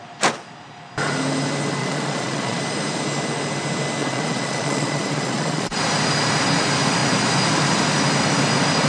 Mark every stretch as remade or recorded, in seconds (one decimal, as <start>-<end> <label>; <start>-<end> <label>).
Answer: 0.0-1.8 recorded; 1.8-2.6 remade; 2.6-4.0 recorded; 4.0-5.7 remade; 5.7-8.9 recorded